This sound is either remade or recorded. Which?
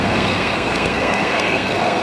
remade